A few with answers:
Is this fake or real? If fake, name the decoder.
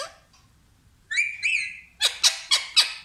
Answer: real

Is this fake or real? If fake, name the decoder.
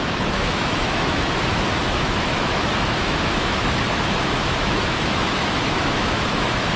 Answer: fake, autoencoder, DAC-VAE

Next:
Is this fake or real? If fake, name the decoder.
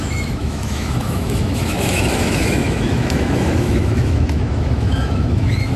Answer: fake, autoencoder, DAC-VAE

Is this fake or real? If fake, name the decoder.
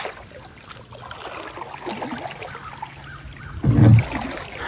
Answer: real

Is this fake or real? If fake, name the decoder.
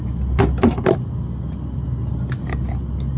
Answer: real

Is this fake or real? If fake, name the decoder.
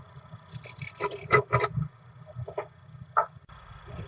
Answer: real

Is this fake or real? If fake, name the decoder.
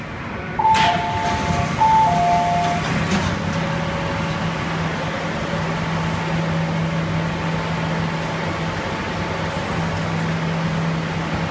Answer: real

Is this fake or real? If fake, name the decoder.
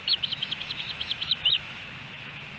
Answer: fake, autoencoder, DAC-VAE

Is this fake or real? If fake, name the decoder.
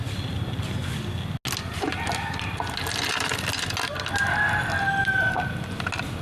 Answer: real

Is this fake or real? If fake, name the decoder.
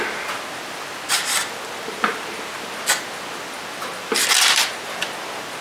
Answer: real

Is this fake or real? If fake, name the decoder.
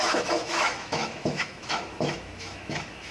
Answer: fake, autoencoder, DAC-VAE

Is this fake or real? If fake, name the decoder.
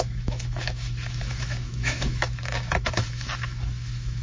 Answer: fake, autoencoder, DAC-VAE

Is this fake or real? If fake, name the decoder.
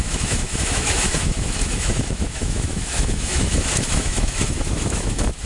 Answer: fake, autoencoder, DAC-VAE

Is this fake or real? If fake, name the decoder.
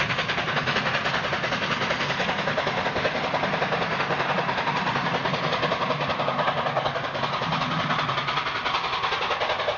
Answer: real